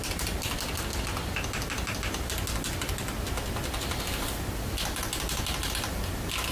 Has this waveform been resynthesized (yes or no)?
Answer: no